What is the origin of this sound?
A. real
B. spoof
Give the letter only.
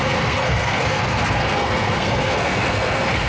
B